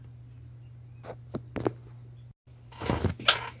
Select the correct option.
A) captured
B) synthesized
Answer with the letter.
A